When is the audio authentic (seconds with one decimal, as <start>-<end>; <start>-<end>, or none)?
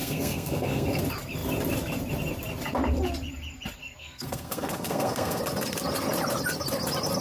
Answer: 1.0-3.8; 5.4-7.2